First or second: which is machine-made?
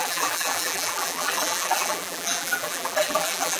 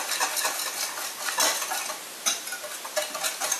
first